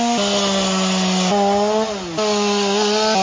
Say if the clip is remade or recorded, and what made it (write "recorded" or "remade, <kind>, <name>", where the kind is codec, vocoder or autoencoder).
recorded